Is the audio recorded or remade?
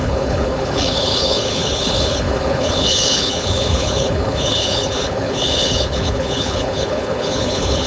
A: remade